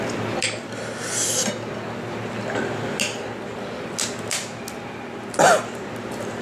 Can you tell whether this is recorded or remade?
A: recorded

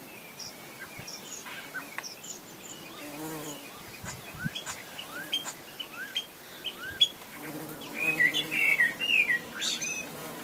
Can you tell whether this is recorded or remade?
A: recorded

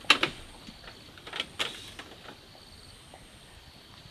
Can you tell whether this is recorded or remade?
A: recorded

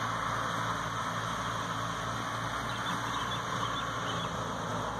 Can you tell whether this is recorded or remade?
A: recorded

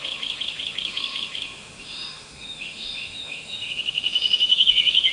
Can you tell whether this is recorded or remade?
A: remade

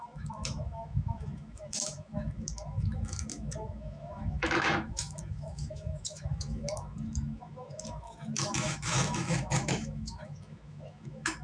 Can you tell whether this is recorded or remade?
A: remade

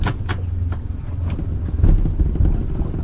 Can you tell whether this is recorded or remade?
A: recorded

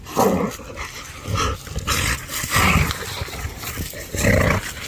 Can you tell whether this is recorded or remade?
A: recorded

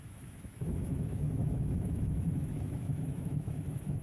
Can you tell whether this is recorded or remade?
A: remade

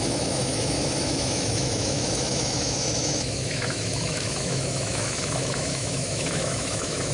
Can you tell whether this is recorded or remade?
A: remade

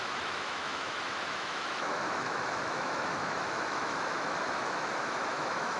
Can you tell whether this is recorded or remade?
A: remade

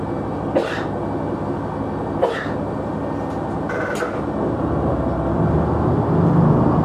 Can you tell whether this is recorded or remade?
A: recorded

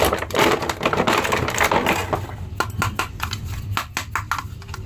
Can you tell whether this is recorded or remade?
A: recorded